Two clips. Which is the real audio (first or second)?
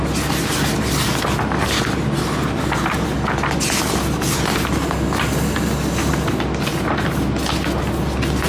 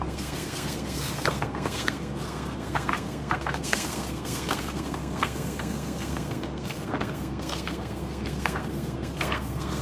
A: first